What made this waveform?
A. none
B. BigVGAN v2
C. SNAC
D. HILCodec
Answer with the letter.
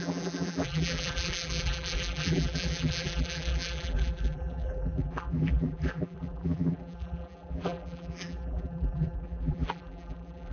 B